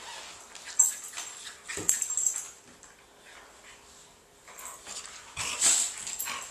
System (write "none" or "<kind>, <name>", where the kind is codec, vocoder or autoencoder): none